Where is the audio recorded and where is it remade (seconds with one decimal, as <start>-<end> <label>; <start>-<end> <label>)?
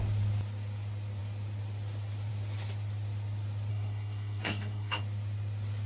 0.0-3.7 recorded; 3.7-5.0 remade; 5.0-5.9 recorded